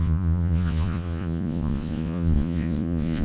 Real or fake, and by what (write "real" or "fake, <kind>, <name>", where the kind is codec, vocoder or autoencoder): fake, vocoder, Vocos